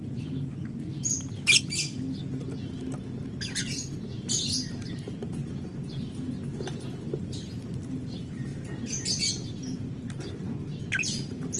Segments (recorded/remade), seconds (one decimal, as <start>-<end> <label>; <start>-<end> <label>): 0.0-11.6 recorded